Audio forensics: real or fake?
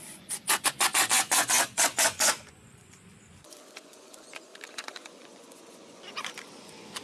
fake